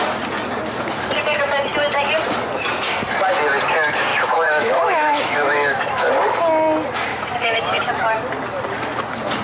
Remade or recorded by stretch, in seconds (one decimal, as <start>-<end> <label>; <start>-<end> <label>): 0.0-4.1 recorded; 4.1-6.1 remade; 6.1-7.1 recorded; 7.1-7.9 remade; 7.9-9.4 recorded